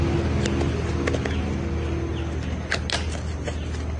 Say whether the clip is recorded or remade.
recorded